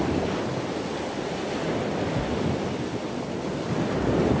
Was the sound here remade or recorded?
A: recorded